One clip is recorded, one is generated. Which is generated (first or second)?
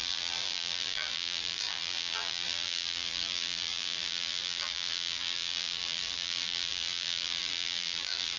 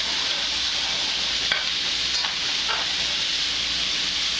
first